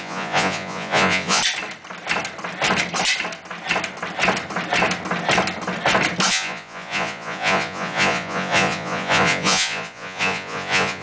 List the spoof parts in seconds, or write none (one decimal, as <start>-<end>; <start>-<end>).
0.0-1.4; 6.3-11.0